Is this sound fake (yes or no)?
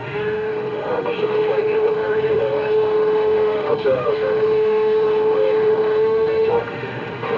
yes